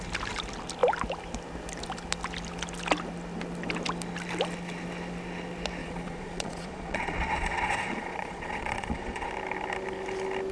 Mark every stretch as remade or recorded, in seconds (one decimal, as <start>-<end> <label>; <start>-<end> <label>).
0.0-5.8 recorded; 5.8-9.3 remade; 9.3-10.5 recorded